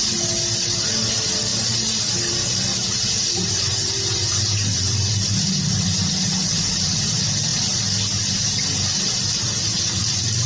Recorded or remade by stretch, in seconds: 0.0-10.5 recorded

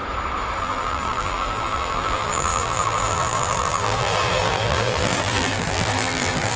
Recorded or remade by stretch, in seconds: 0.0-0.6 recorded; 0.6-6.6 remade

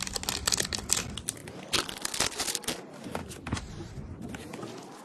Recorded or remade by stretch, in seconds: 0.0-0.4 recorded; 0.4-0.9 remade; 0.9-3.2 recorded; 3.2-3.7 remade; 3.7-5.0 recorded

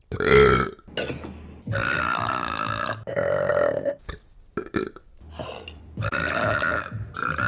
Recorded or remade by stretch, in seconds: 0.0-1.8 recorded; 1.8-2.9 remade; 2.9-4.8 recorded; 4.8-6.1 remade; 6.1-7.5 recorded

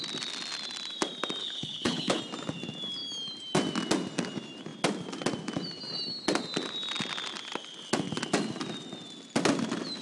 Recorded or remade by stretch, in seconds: 0.0-1.4 recorded; 1.4-2.2 remade; 2.2-10.0 recorded

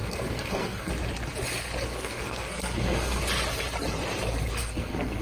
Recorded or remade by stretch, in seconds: 0.0-0.9 remade; 0.9-1.9 recorded; 1.9-3.2 remade; 3.2-4.6 recorded; 4.6-5.2 remade

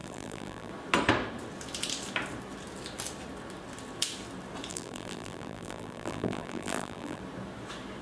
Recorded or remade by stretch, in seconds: 0.0-0.7 remade; 0.7-4.7 recorded; 4.7-7.2 remade; 7.2-8.0 recorded

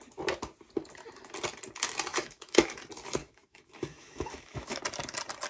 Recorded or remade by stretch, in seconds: 0.0-2.1 recorded; 2.1-2.8 remade; 2.8-3.2 recorded; 3.2-4.8 remade; 4.8-5.5 recorded